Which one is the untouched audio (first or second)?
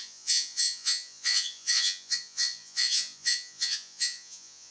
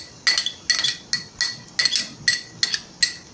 second